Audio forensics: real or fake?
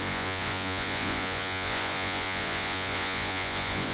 fake